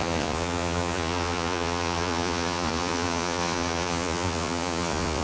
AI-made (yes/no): yes